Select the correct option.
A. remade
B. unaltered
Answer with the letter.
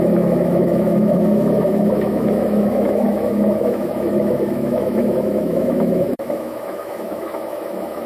A